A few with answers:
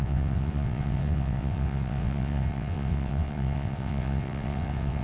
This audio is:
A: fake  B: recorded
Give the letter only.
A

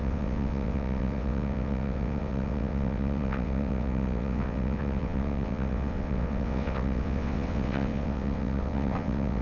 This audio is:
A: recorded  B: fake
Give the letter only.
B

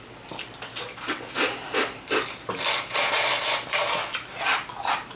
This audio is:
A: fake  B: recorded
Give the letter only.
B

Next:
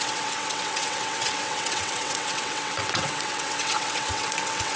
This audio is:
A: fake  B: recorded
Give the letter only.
A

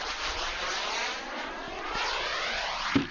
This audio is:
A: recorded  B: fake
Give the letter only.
A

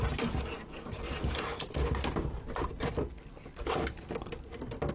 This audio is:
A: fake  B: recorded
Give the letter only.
B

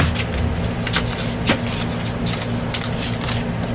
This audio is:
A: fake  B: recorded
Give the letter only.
B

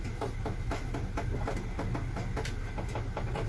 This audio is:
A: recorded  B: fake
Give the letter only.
A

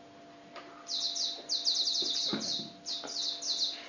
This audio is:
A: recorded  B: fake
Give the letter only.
A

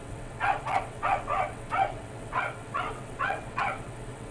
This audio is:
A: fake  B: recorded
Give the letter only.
A